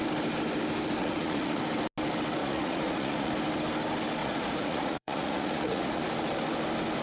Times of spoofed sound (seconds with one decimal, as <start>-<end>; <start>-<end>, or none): 1.0-1.6; 2.4-3.3; 4.2-6.0